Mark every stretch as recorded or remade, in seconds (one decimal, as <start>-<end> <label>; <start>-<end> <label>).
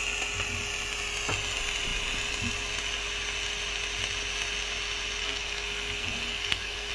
0.0-5.2 recorded; 5.2-6.9 remade